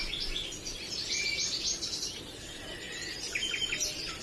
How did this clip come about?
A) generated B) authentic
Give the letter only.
B